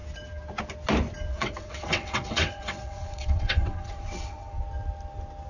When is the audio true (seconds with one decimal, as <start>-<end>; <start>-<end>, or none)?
0.0-1.3; 4.6-5.5